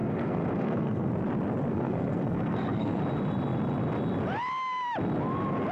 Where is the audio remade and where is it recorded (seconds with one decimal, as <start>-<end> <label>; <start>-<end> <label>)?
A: 0.0-1.1 remade; 1.1-1.7 recorded; 1.7-3.0 remade; 3.0-5.7 recorded